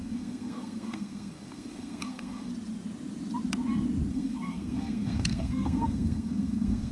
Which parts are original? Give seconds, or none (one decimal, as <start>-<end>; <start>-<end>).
2.5-4.1

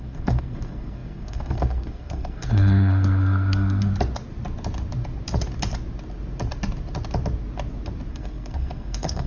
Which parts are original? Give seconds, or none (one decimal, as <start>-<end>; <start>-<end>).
3.9-8.1

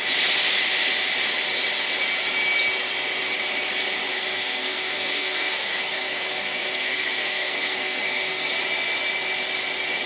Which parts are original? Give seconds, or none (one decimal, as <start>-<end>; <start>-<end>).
0.0-4.1; 8.5-10.1